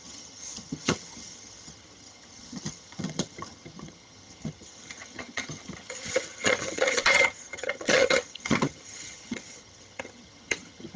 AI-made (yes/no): yes